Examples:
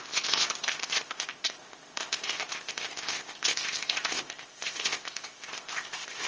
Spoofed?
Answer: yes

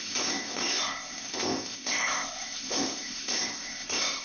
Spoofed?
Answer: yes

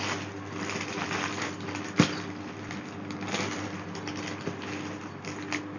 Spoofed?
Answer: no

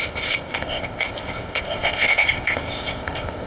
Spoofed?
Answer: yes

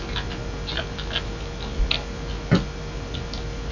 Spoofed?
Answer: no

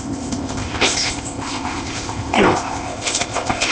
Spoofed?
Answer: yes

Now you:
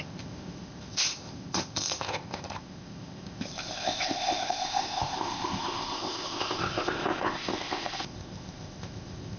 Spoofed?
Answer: yes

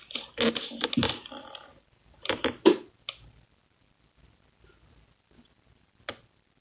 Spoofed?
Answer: no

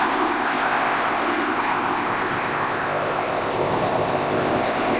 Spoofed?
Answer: yes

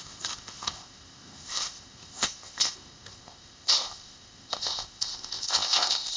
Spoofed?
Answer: yes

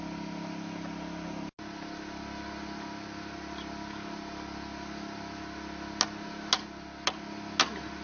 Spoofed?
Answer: no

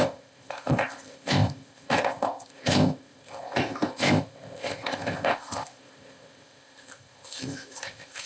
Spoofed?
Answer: yes